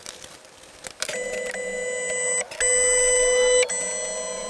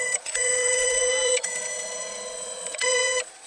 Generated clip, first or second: second